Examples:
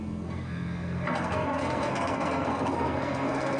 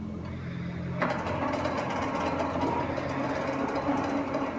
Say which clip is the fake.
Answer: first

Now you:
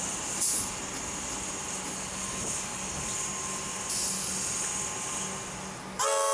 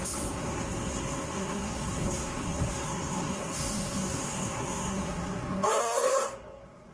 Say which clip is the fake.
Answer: second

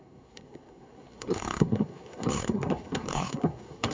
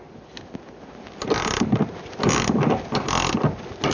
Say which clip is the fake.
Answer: first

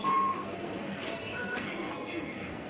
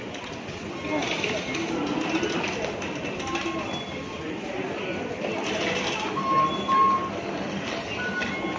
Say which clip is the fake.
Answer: first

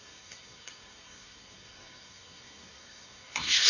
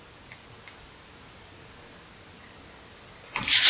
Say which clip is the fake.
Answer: first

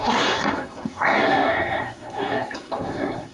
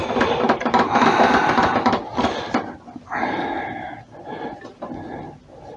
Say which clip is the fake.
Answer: first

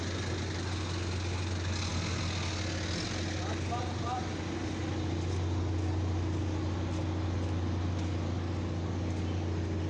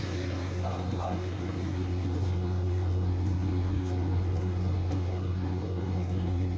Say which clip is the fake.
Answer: second